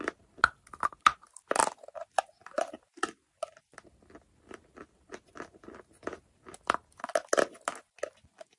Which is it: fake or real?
real